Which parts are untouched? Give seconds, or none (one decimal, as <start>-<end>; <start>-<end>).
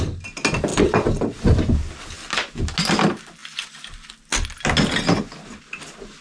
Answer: 0.0-6.2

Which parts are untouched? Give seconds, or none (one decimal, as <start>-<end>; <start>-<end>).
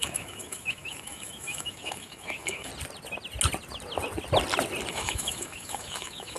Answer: 2.7-4.9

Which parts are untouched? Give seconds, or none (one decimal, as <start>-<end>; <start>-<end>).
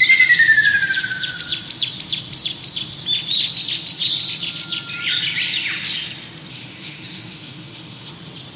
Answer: 0.0-6.5; 8.1-8.6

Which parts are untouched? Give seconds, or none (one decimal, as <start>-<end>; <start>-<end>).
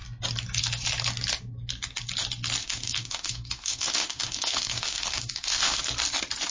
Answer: 0.0-2.6; 5.8-6.5